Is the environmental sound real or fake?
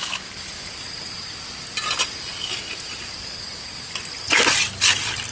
real